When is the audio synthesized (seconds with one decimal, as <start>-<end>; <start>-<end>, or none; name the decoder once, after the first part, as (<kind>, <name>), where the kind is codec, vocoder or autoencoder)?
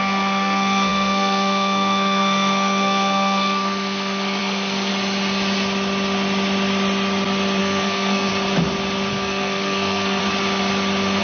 0.0-4.9 (codec, SNAC); 7.6-8.3; 9.1-10.2